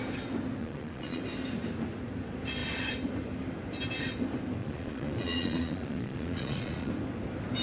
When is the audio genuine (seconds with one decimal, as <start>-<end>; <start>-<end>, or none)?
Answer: 0.0-0.6; 1.2-4.6; 6.9-7.6